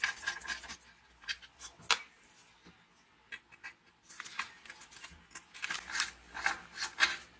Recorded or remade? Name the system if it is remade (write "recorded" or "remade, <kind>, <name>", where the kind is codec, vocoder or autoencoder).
recorded